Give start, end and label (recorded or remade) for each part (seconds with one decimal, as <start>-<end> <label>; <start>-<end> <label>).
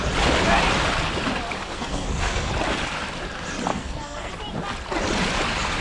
0.0-1.6 recorded; 1.6-2.5 remade; 2.5-3.7 recorded; 3.7-4.3 remade; 4.3-5.8 recorded